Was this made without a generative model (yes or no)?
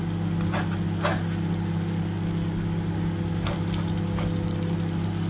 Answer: yes